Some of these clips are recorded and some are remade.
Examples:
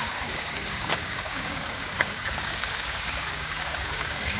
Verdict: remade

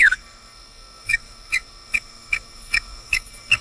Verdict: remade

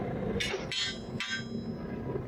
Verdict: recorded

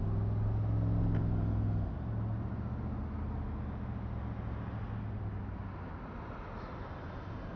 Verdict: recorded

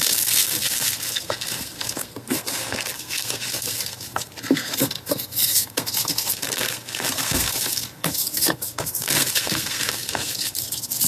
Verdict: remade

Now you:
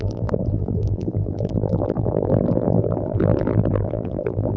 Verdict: remade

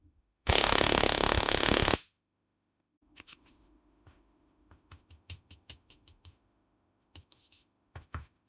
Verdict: remade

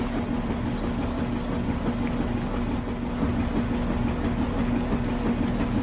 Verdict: recorded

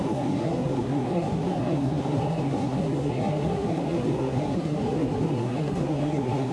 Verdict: remade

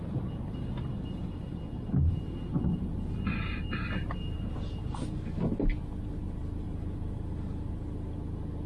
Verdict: recorded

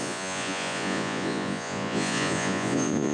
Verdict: remade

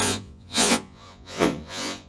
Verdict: remade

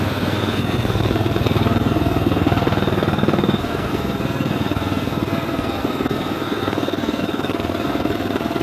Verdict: remade